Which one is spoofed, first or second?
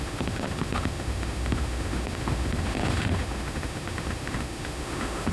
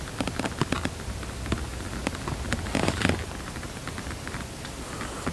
first